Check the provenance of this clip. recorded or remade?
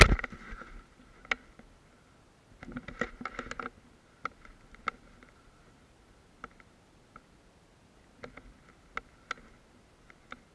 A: recorded